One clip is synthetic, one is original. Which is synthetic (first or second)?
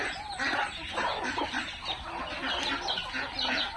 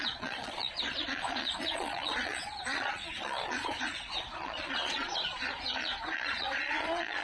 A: second